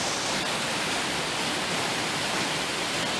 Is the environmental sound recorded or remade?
recorded